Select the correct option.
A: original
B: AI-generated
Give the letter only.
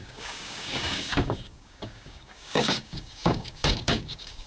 B